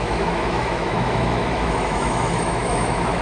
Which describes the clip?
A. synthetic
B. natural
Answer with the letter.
A